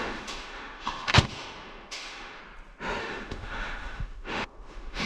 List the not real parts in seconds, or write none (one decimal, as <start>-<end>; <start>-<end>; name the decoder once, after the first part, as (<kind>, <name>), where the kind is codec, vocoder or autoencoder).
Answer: 0.0-2.4 (autoencoder, DAC-VAE); 3.0-5.1